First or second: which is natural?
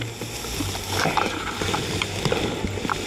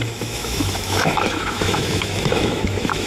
first